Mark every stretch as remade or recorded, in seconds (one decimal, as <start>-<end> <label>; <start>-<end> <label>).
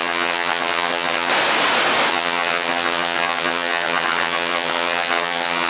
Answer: 0.0-1.3 remade; 1.3-2.1 recorded; 2.1-5.7 remade